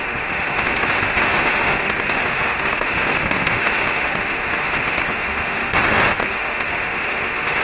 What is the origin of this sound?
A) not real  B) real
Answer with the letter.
A